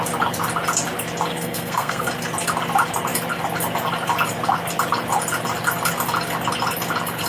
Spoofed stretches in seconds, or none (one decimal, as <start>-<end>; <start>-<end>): 1.3-2.1